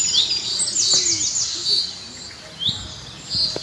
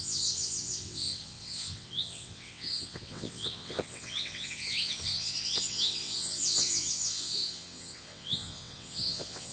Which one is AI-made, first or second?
second